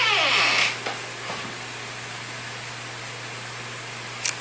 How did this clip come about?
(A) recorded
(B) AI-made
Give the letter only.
A